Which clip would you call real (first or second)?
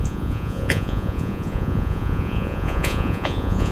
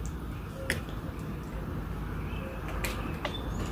second